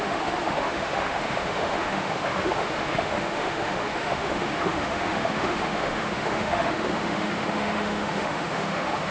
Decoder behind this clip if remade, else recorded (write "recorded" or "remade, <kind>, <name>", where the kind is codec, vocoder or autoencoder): remade, autoencoder, DAC-VAE